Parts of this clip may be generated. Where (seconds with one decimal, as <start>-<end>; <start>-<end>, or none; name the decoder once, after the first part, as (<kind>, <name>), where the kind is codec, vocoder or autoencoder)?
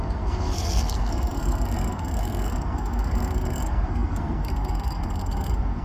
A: 0.0-5.8 (codec, SNAC)